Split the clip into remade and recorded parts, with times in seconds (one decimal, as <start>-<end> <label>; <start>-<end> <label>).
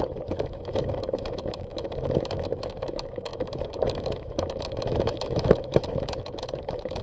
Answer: 0.0-7.0 remade